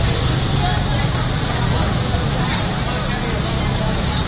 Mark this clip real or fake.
real